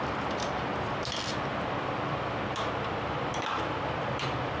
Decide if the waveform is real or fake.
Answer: fake